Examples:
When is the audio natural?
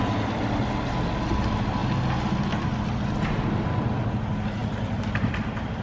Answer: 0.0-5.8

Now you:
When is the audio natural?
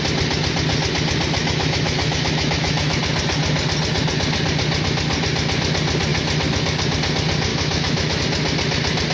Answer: 0.0-1.4; 3.0-7.5; 8.2-9.1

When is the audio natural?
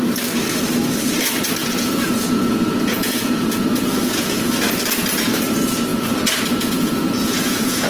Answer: 0.0-1.6; 4.5-5.9